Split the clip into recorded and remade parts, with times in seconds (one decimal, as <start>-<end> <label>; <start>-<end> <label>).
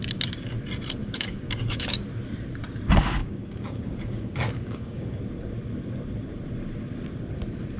0.0-1.0 recorded; 1.0-2.0 remade; 2.0-3.2 recorded; 3.2-5.2 remade; 5.2-7.8 recorded